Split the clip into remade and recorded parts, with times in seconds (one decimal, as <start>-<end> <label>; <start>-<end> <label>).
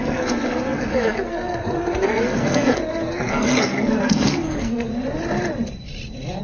0.0-4.9 remade; 4.9-6.4 recorded